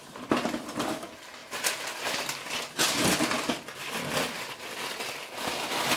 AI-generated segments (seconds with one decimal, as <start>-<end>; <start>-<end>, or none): none